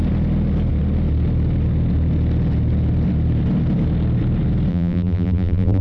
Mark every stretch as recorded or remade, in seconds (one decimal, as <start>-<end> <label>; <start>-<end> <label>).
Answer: 0.0-4.7 recorded; 4.7-5.8 remade